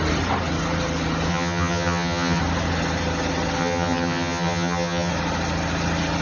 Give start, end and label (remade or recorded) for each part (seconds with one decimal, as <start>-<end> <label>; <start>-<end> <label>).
0.0-1.3 recorded; 1.3-2.4 remade; 2.4-3.6 recorded; 3.6-5.1 remade; 5.1-6.2 recorded